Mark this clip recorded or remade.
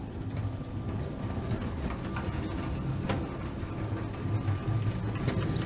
recorded